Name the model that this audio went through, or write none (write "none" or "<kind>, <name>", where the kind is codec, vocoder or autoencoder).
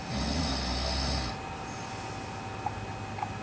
none